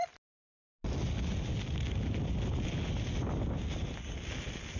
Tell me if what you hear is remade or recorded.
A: recorded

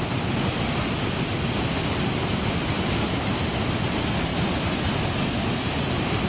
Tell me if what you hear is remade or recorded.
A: recorded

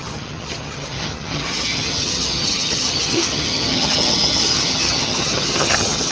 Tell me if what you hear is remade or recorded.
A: remade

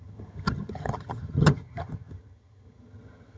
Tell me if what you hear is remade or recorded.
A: remade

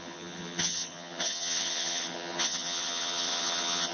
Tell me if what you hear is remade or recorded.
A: remade